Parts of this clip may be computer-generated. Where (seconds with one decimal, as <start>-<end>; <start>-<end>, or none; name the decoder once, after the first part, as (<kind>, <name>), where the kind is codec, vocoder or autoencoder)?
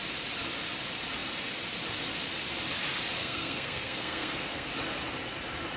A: 3.2-4.7 (codec, SNAC)